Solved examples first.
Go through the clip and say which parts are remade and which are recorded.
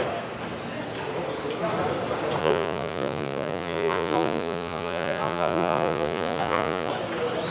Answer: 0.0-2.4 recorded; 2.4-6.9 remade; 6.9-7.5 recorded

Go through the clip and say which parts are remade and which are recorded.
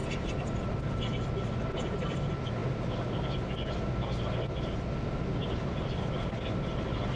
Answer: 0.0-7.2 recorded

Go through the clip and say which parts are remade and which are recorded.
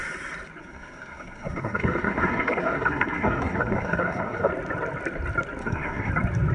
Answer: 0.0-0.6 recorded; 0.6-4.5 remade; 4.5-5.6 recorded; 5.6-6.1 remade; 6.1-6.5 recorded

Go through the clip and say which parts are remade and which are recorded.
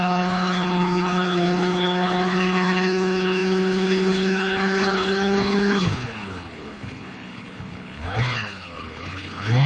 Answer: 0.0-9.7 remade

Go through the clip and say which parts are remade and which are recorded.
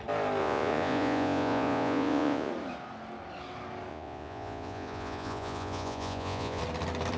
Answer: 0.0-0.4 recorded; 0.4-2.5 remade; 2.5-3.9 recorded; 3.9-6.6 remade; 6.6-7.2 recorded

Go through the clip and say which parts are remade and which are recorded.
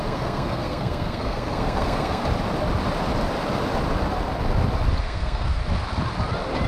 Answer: 0.0-2.2 remade; 2.2-5.0 recorded; 5.0-5.6 remade; 5.6-6.7 recorded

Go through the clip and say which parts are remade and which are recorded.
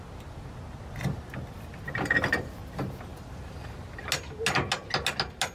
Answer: 0.0-5.5 recorded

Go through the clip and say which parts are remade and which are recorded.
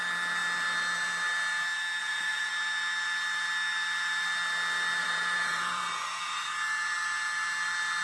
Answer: 0.0-2.0 recorded; 2.0-2.5 remade; 2.5-5.0 recorded; 5.0-6.5 remade; 6.5-8.0 recorded